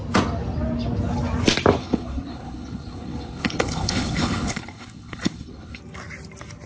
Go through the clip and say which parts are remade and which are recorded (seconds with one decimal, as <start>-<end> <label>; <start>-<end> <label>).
0.0-1.8 recorded; 1.8-5.8 remade; 5.8-6.7 recorded